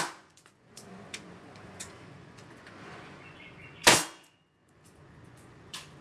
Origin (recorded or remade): remade